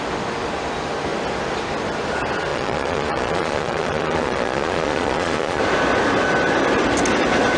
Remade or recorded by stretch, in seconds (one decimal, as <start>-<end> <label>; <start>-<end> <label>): 0.0-2.5 recorded; 2.5-5.6 remade; 5.6-7.6 recorded